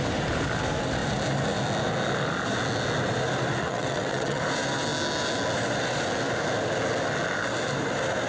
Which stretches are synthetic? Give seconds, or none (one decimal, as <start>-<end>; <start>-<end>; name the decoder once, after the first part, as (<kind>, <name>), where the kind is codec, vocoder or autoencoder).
3.6-4.4 (vocoder, WaveNeXt)